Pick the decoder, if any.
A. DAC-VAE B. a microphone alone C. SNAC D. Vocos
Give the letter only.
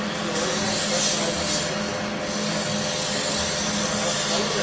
B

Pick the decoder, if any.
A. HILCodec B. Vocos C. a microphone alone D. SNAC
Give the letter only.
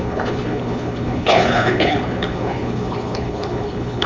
A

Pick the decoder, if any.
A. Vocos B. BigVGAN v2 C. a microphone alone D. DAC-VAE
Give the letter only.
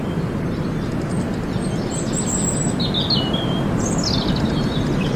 C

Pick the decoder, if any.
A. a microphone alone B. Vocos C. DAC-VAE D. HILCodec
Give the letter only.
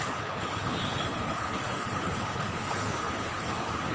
D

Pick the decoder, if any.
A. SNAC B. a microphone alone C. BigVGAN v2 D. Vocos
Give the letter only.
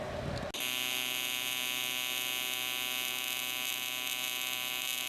B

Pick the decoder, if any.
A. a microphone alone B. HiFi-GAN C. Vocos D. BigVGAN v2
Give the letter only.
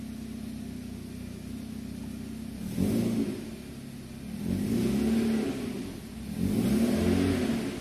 A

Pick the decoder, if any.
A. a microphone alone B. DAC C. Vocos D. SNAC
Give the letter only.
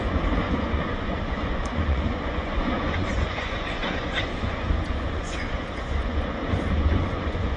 C